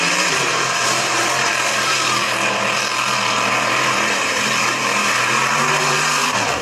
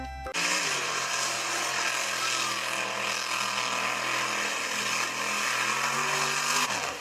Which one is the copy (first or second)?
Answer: first